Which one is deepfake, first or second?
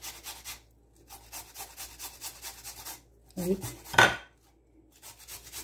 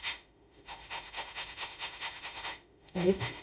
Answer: second